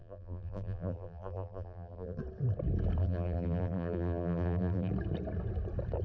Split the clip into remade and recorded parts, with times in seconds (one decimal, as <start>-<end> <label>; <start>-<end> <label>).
0.0-2.2 remade; 2.2-3.0 recorded; 3.0-4.9 remade; 4.9-6.0 recorded